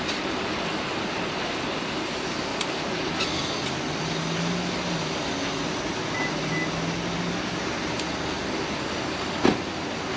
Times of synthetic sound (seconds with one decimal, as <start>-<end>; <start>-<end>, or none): none